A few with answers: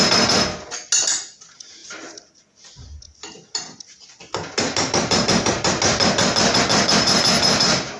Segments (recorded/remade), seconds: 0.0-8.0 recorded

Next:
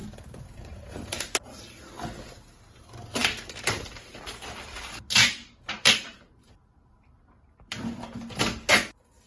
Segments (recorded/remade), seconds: 0.0-1.8 remade; 1.8-3.2 recorded; 3.2-8.4 remade; 8.4-9.3 recorded

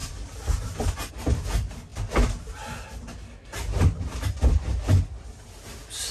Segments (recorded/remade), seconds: 0.0-1.1 remade; 1.1-6.1 recorded

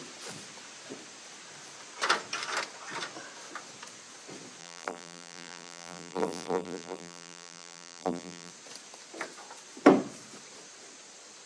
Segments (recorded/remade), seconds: 0.0-4.6 recorded; 4.6-8.5 remade; 8.5-11.5 recorded

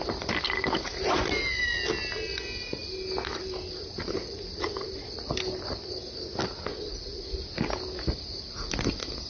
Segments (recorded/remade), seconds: 0.0-2.8 recorded; 2.8-5.9 remade; 5.9-9.3 recorded

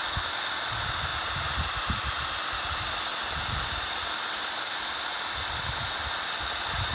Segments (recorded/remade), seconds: 0.0-1.1 recorded; 1.1-2.7 remade; 2.7-3.1 recorded; 3.1-3.8 remade; 3.8-6.9 recorded

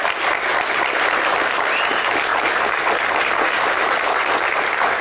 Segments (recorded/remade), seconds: 0.0-2.3 recorded; 2.3-3.8 remade; 3.8-5.0 recorded

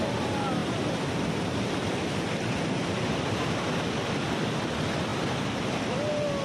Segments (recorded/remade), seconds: 0.0-6.4 recorded